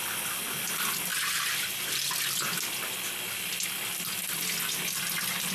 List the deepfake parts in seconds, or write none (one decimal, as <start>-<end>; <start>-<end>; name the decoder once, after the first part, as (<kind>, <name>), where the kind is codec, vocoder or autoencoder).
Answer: none